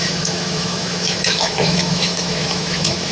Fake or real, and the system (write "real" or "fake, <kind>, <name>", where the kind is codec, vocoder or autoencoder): fake, autoencoder, DAC-VAE